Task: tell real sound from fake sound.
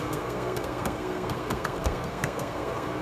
fake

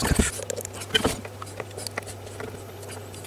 real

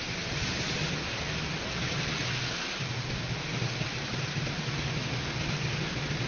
real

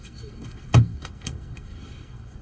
fake